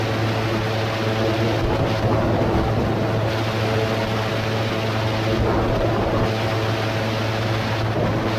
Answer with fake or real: real